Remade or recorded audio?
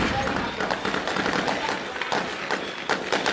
recorded